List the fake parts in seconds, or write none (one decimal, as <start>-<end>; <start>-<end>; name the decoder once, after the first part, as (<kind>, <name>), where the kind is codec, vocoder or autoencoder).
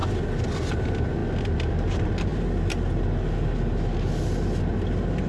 none